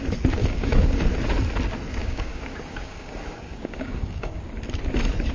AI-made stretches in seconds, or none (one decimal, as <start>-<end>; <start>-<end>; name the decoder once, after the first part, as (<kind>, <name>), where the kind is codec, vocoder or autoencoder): 0.4-1.0 (codec, DAC); 2.0-4.4